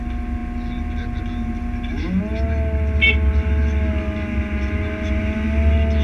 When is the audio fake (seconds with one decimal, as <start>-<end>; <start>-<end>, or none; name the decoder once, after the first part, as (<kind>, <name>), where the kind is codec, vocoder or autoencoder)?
none